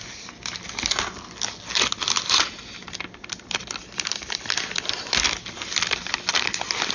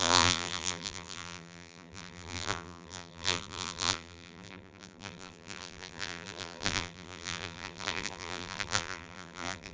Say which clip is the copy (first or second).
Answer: second